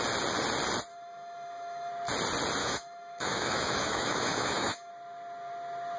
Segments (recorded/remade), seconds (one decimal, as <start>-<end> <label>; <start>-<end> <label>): 0.0-0.9 recorded; 0.9-1.9 remade; 1.9-2.6 recorded; 2.6-4.9 remade; 4.9-6.0 recorded